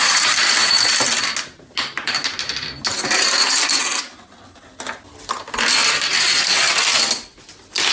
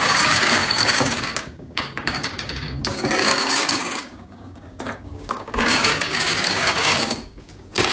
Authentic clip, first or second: first